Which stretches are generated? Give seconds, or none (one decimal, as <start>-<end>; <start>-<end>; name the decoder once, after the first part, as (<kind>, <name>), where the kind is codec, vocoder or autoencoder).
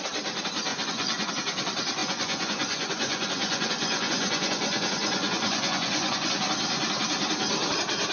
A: 0.7-1.3 (vocoder, Vocos); 2.0-6.3